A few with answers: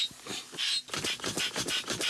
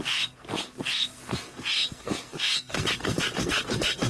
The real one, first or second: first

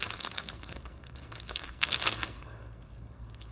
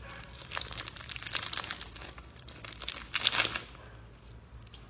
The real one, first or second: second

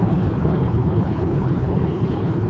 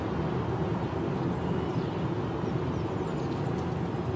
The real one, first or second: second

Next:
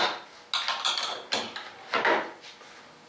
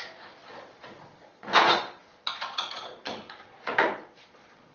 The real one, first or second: first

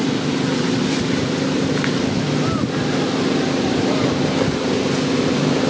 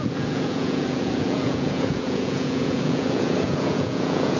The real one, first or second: first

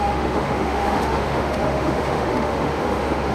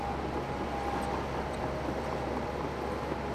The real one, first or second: second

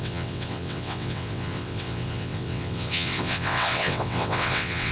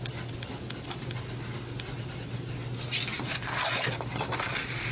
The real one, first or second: second